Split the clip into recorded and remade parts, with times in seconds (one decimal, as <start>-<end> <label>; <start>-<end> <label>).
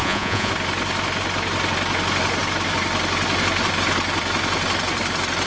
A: 0.0-0.5 remade; 0.5-5.5 recorded